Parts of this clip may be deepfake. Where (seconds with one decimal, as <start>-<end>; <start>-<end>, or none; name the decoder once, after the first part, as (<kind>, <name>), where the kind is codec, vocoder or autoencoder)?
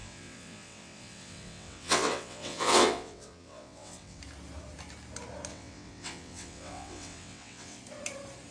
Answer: 0.0-4.2 (vocoder, WaveNeXt); 5.5-7.8